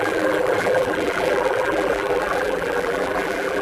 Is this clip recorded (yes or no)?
no